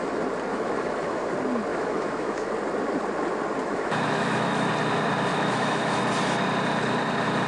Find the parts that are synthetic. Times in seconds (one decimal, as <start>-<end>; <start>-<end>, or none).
0.5-1.2; 1.7-2.5; 3.6-4.7; 5.3-6.0